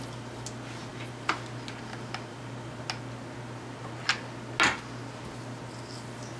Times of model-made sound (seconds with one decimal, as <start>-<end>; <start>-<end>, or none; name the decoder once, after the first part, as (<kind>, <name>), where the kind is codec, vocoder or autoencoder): none